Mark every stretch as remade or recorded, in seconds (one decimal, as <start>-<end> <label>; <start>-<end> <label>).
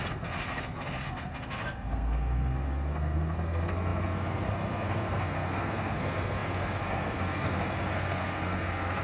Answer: 0.0-9.0 remade